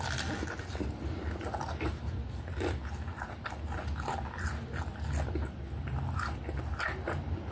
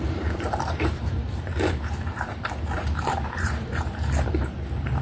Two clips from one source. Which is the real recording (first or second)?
first